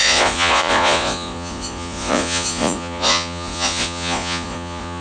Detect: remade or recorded remade